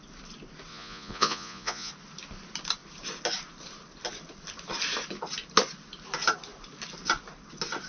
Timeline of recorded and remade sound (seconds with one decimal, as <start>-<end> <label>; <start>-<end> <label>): 0.0-0.7 recorded; 0.7-1.9 remade; 1.9-7.9 recorded